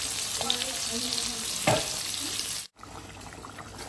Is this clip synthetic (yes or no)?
yes